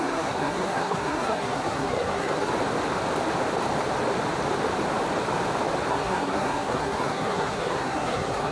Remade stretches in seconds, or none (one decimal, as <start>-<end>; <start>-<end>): 0.0-2.5; 5.9-8.5